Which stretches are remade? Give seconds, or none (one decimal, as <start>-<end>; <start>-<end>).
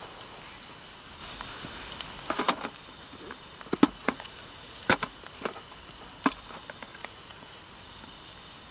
4.0-4.9; 6.9-7.6